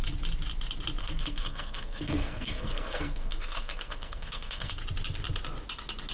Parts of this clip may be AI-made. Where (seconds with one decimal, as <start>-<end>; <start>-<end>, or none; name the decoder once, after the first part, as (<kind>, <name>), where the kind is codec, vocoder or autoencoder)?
1.0-4.7 (codec, SNAC)